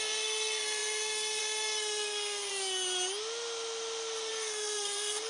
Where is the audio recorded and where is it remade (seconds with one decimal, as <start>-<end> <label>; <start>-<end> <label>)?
0.0-2.5 remade; 2.5-4.3 recorded; 4.3-5.3 remade